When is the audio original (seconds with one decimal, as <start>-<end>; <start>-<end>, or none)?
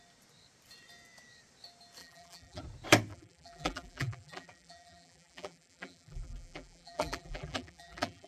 0.0-2.0; 2.6-3.1